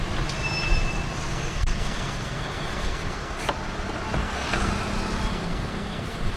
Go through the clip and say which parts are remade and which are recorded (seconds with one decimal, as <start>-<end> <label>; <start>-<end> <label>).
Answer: 0.0-1.3 recorded; 1.3-3.4 remade; 3.4-4.2 recorded; 4.2-4.7 remade; 4.7-5.3 recorded; 5.3-6.4 remade